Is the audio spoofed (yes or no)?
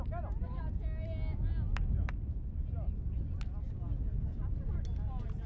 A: no